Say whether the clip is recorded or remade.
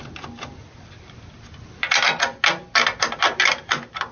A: recorded